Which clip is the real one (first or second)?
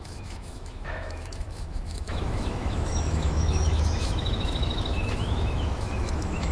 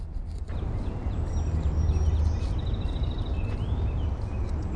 second